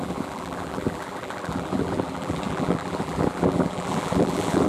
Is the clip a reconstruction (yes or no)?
yes